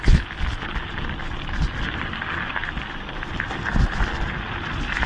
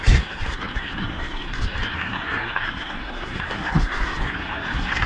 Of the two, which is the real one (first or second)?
first